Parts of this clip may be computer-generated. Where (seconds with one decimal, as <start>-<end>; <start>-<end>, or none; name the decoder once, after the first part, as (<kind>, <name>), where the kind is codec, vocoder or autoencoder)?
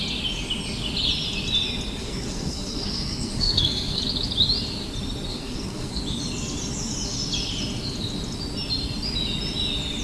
2.0-4.0 (codec, SNAC); 5.3-6.0